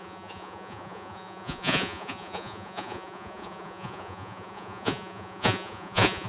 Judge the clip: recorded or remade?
remade